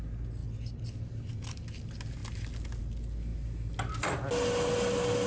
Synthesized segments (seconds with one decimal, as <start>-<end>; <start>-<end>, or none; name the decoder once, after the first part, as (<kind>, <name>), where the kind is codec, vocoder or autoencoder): none